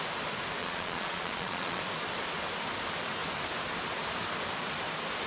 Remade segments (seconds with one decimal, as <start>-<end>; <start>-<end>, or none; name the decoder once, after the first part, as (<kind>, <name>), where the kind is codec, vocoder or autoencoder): 0.6-1.8 (vocoder, Vocos)